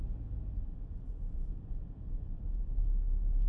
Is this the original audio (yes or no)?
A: yes